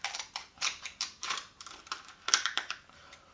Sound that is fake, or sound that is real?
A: fake